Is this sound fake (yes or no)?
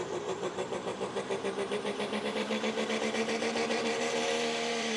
yes